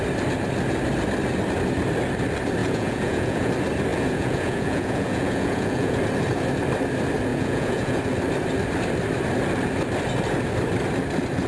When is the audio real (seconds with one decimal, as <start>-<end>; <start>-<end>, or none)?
0.0-2.6; 3.5-3.9; 6.0-7.3; 8.0-11.5